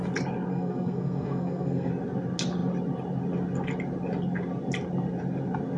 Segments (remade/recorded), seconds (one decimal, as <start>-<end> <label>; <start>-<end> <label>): 0.0-0.5 recorded; 0.5-1.9 remade; 1.9-5.8 recorded